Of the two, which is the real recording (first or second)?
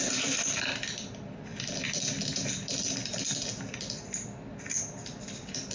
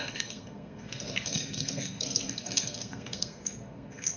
first